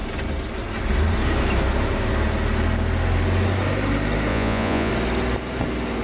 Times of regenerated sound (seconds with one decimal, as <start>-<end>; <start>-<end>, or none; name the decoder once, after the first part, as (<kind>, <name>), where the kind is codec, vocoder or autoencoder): 4.3-4.9 (vocoder, Vocos)